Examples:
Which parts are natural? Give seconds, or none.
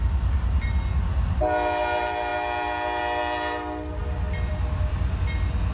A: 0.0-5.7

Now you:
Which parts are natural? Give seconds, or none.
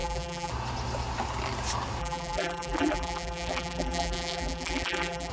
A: 0.5-2.0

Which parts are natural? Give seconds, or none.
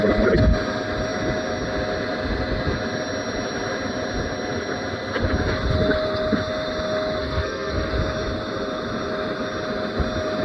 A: 0.0-7.2; 7.9-10.4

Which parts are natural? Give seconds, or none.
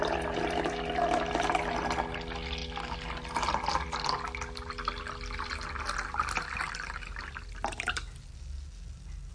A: 0.0-9.3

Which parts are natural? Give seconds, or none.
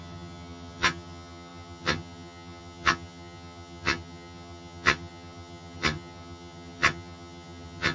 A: none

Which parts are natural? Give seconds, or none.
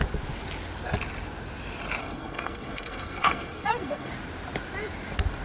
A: 0.0-2.0; 4.1-5.4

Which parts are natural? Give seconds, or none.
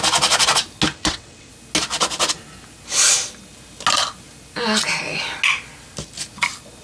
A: 0.0-0.9; 1.5-6.8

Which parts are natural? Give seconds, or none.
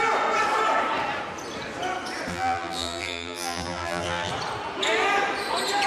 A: 0.0-2.3; 4.3-5.9